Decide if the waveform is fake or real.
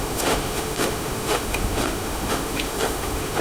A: fake